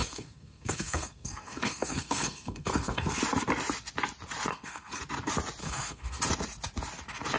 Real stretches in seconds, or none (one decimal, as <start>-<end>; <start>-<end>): 3.2-4.5; 5.0-5.6; 6.2-7.4